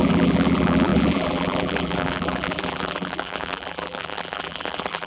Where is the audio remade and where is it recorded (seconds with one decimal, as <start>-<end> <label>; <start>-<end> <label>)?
0.0-5.1 remade

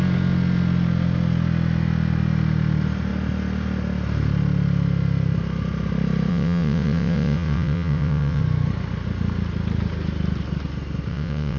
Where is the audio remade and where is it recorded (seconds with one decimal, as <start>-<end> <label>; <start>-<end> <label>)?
0.0-6.3 recorded; 6.3-8.4 remade; 8.4-11.1 recorded; 11.1-11.6 remade

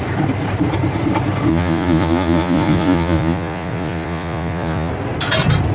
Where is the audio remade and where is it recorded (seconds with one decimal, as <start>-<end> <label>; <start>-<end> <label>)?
0.0-1.5 recorded; 1.5-4.9 remade; 4.9-5.7 recorded

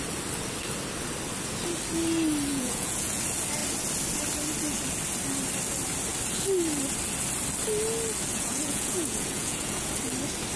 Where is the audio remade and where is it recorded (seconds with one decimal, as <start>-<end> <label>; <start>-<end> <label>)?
0.0-2.5 recorded; 2.5-3.2 remade; 3.2-8.3 recorded; 8.3-9.9 remade; 9.9-10.6 recorded

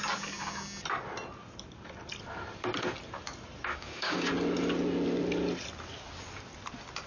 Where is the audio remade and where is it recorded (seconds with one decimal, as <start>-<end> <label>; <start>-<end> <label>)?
0.0-3.7 recorded; 3.7-4.3 remade; 4.3-7.1 recorded

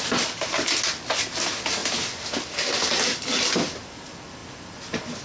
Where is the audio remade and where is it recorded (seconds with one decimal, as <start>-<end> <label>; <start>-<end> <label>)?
0.0-5.2 recorded

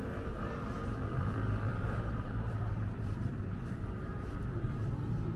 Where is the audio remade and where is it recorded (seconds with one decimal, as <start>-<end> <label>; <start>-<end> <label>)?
0.0-1.7 recorded; 1.7-4.7 remade; 4.7-5.4 recorded